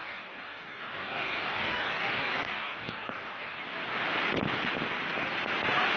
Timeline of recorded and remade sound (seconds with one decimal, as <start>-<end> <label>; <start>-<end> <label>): 0.0-3.6 remade; 3.6-6.0 recorded

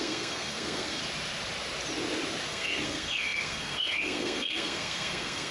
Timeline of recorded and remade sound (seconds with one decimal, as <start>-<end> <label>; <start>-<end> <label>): 0.0-1.0 remade; 1.0-2.5 recorded; 2.5-5.5 remade